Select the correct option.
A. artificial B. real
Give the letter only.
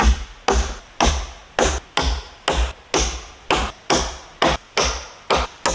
B